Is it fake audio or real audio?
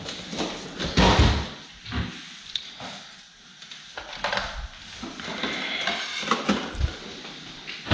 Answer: real